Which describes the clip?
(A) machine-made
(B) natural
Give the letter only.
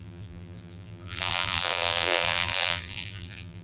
A